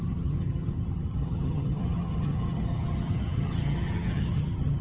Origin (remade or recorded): remade